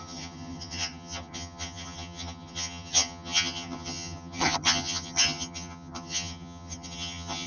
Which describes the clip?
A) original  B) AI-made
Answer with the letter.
B